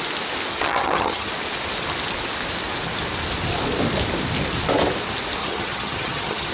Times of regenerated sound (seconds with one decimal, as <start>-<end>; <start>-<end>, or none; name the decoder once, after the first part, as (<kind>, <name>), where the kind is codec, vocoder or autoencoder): 0.5-1.3 (vocoder, HiFi-GAN); 5.4-6.5